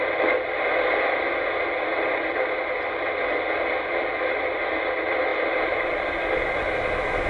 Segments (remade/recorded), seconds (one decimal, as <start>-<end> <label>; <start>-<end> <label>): 0.0-7.3 recorded